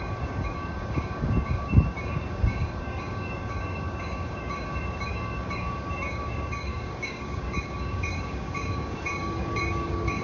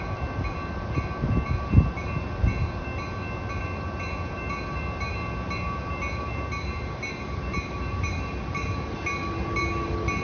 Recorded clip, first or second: second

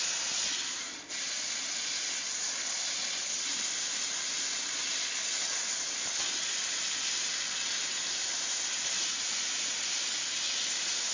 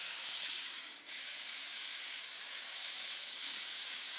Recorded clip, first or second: first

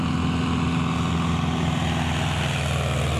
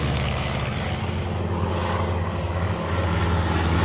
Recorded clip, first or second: first